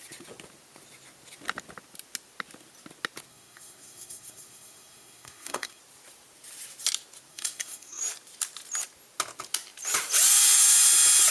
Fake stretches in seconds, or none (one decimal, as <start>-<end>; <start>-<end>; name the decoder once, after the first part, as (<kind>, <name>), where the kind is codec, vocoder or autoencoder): 3.3-5.8 (codec, SNAC); 7.3-8.0